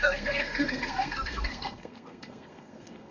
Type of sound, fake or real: fake